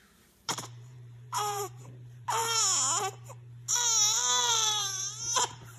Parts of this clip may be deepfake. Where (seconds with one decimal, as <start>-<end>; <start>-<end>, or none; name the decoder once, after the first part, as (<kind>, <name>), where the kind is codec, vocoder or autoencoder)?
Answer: 0.0-2.4 (vocoder, BigVGAN v2); 4.5-5.8